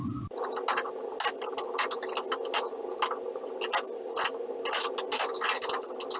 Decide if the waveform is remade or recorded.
recorded